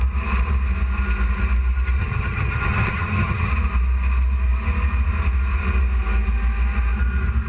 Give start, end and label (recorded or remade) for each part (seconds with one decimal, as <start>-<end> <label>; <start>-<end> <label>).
0.0-2.0 recorded; 2.0-3.5 remade; 3.5-7.5 recorded